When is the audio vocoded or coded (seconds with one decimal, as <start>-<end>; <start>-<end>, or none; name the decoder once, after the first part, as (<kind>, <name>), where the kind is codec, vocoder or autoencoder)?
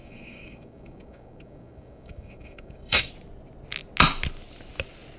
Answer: 0.0-3.1 (codec, DAC)